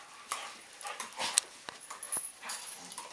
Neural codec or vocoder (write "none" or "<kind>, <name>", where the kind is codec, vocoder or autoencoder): none